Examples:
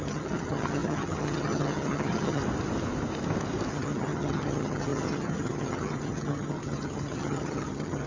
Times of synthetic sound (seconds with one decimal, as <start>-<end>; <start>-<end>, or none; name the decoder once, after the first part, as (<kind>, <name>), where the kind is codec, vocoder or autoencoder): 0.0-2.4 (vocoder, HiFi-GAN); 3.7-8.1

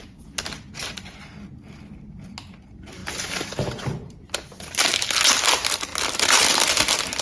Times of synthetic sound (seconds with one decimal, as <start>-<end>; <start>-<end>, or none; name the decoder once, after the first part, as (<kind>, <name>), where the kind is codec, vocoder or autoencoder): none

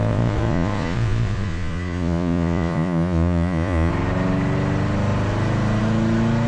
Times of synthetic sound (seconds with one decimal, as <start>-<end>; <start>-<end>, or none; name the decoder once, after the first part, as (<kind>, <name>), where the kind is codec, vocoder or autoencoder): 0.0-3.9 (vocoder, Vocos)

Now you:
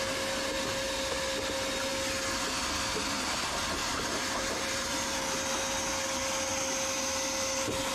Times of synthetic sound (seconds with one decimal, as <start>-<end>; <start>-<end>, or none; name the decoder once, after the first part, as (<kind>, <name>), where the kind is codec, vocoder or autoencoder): 3.8-5.2 (vocoder, BigVGAN v2)

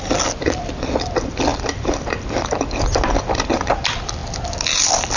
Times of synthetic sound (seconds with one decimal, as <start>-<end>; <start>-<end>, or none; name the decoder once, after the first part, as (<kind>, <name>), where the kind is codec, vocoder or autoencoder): none

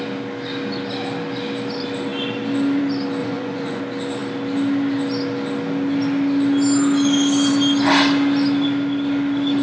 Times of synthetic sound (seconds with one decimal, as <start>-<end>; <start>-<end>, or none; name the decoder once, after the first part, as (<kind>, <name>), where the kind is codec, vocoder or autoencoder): 3.2-3.8 (vocoder, Vocos)